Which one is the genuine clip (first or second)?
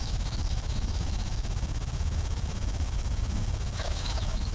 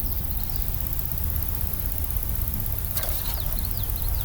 second